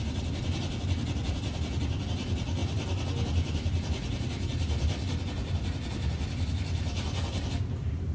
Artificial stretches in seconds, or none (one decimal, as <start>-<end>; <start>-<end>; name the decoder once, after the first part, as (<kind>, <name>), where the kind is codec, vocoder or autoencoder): none